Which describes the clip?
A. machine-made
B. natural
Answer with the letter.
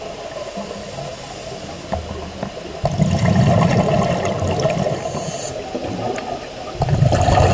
B